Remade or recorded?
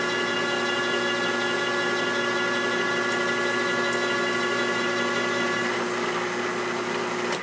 recorded